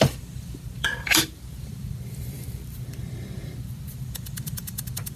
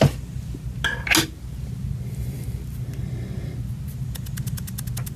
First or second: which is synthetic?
first